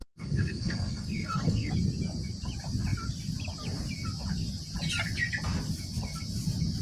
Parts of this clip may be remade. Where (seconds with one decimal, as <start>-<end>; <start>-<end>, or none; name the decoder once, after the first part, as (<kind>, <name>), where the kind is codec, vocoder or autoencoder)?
0.0-1.7 (codec, SNAC)